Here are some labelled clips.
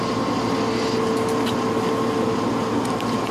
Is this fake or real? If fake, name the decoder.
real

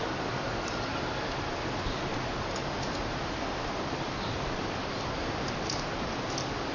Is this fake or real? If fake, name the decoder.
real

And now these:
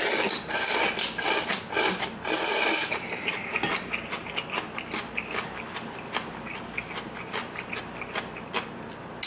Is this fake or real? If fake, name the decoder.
real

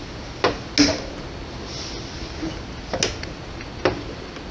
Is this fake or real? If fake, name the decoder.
real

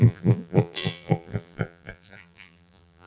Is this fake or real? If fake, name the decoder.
fake, vocoder, BigVGAN v2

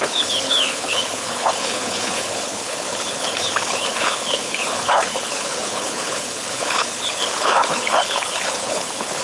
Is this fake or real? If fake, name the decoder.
fake, codec, HILCodec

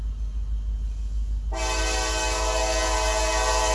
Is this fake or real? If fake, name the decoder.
real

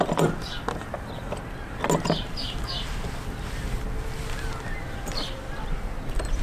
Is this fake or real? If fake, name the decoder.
real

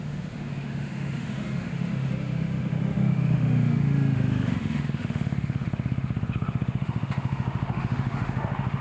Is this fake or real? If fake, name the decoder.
fake, autoencoder, DAC-VAE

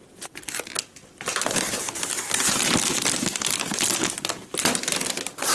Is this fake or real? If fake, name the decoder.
real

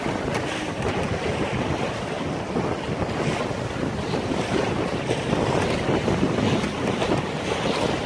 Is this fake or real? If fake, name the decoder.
real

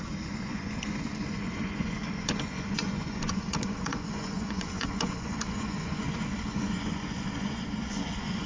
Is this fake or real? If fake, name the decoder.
fake, vocoder, Vocos